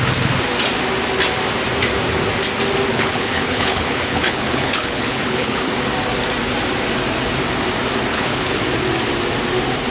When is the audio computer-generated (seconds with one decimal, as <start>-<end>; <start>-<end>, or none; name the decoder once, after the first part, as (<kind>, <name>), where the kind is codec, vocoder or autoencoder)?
2.9-5.7 (codec, HILCodec); 8.1-8.6